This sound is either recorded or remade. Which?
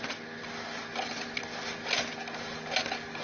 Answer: recorded